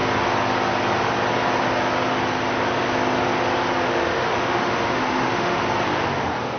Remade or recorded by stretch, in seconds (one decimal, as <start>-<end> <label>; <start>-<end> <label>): 0.0-3.8 recorded; 3.8-5.6 remade; 5.6-6.6 recorded